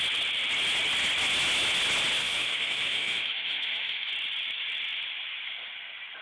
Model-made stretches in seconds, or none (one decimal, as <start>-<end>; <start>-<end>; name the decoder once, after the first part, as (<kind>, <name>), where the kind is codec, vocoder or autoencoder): 2.2-4.1 (autoencoder, DAC-VAE)